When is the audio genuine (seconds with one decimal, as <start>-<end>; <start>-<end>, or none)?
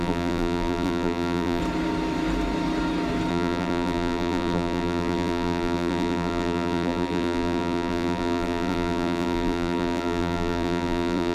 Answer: 1.6-3.3